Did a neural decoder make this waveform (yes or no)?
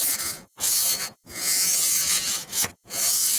yes